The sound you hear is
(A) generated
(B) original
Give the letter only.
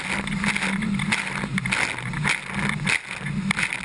B